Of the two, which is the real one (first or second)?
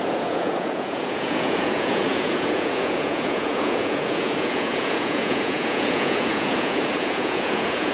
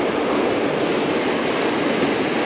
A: second